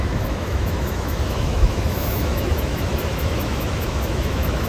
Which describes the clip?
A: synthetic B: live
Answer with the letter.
A